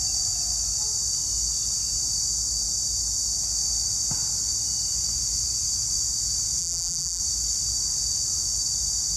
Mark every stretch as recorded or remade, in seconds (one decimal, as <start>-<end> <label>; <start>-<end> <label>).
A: 0.0-6.6 recorded; 6.6-7.2 remade; 7.2-9.2 recorded